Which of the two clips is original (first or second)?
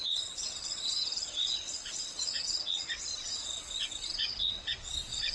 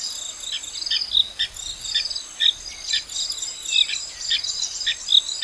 second